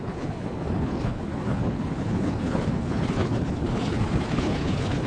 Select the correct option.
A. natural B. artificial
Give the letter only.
B